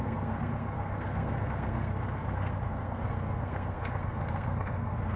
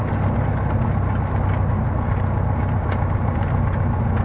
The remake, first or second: first